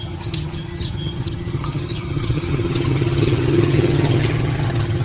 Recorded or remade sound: remade